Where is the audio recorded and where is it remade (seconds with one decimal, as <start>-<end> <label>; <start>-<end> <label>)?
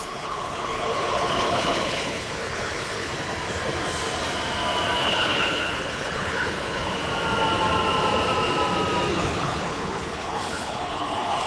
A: 0.0-3.1 remade; 3.1-5.0 recorded; 5.0-7.0 remade; 7.0-9.1 recorded; 9.1-11.5 remade